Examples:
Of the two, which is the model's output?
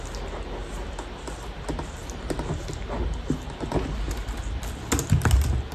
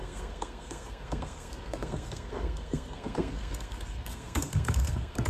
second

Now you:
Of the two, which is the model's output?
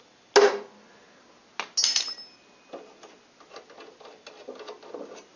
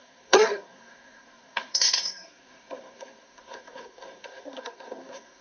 second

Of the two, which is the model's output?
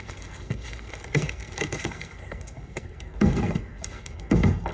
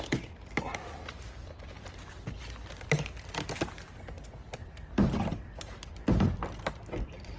first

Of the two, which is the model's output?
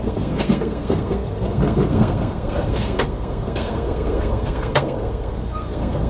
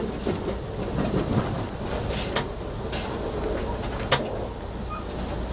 first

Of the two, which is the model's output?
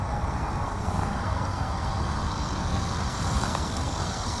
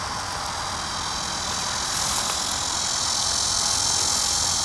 first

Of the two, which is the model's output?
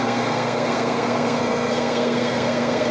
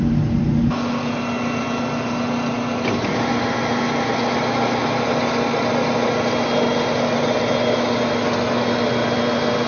first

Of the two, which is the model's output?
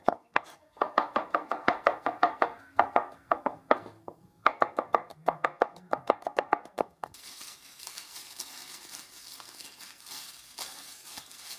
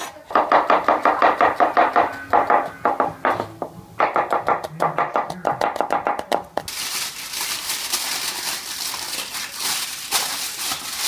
first